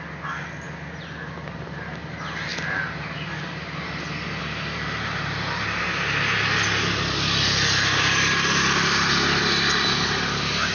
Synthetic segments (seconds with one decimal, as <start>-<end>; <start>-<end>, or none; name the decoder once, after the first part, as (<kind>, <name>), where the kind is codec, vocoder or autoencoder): none